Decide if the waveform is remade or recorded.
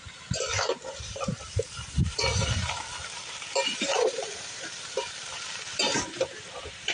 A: remade